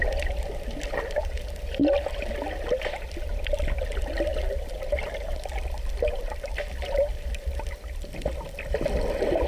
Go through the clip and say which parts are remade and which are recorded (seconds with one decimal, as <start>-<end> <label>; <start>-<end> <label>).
0.0-9.5 recorded